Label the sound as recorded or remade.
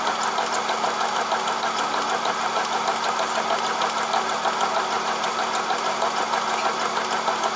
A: recorded